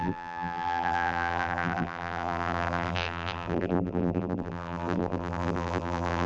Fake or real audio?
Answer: fake